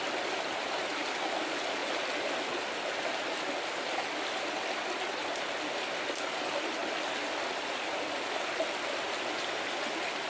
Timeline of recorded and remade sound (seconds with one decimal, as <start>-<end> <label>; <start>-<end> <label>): 0.0-10.3 recorded